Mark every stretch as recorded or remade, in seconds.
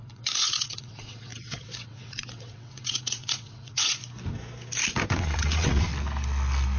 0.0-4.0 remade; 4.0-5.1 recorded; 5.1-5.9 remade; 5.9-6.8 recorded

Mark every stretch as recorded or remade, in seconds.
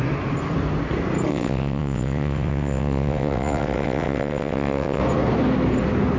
0.0-1.3 recorded; 1.3-5.0 remade; 5.0-6.2 recorded